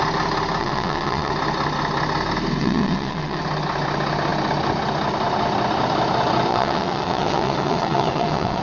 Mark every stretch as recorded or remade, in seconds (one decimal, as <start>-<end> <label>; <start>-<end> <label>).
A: 0.0-0.6 recorded; 0.6-1.3 remade; 1.3-2.6 recorded; 2.6-3.4 remade; 3.4-6.5 recorded; 6.5-8.6 remade